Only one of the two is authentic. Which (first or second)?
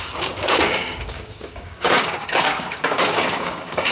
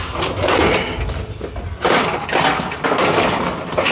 second